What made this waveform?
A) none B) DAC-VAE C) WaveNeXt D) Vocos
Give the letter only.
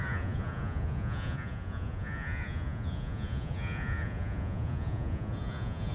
D